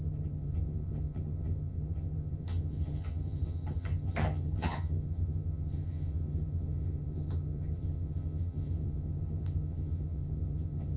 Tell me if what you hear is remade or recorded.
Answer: remade